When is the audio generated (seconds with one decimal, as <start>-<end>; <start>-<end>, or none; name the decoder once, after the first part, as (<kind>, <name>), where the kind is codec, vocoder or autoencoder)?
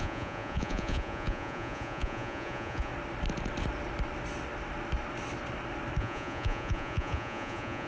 0.0-2.9 (vocoder, Vocos); 6.0-7.9